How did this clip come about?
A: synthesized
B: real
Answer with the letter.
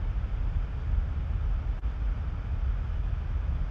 B